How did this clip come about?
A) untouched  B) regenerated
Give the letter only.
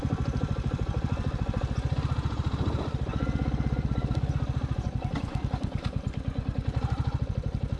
B